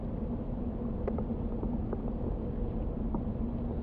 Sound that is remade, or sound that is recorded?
recorded